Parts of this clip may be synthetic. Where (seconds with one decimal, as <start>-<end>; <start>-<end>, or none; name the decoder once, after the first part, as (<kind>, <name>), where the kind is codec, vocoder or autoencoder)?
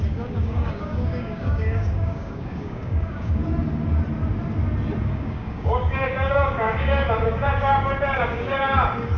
0.0-3.4 (codec, DAC); 5.0-9.2